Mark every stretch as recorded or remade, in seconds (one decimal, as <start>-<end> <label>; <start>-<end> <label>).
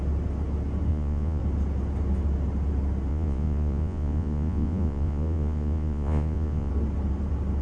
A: 0.0-0.9 recorded; 0.9-1.4 remade; 1.4-3.1 recorded; 3.1-6.7 remade; 6.7-7.6 recorded